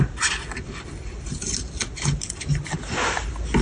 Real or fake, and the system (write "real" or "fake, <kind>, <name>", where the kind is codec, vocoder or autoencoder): real